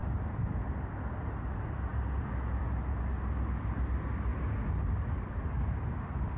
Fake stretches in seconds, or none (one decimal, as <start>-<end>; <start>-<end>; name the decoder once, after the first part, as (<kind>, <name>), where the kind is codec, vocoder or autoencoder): none